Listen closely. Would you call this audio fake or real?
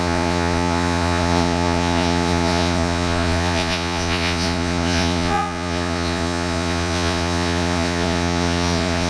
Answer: fake